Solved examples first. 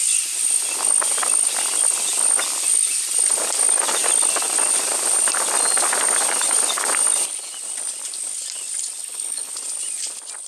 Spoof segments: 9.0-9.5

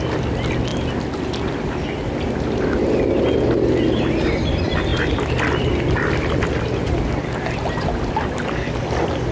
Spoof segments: none

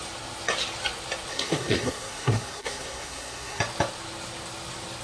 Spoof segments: 1.3-3.6

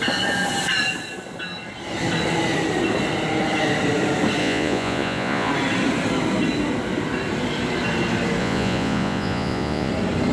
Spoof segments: 4.4-5.5; 8.4-9.9